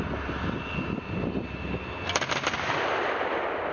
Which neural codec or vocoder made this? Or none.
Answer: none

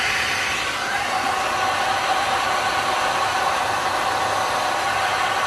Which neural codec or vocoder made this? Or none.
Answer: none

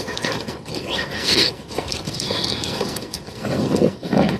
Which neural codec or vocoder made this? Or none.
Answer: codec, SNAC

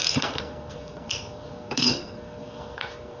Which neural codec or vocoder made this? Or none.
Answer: codec, SNAC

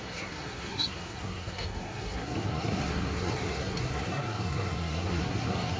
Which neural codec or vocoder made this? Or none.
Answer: codec, SNAC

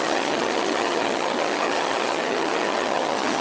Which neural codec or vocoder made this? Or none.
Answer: vocoder, HiFi-GAN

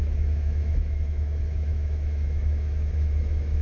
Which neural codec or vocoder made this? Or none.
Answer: autoencoder, DAC-VAE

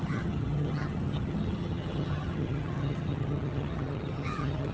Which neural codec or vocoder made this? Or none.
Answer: vocoder, HiFi-GAN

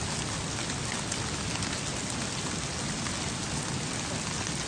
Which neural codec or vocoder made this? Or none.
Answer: none